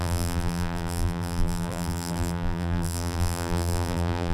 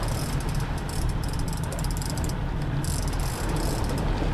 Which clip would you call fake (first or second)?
first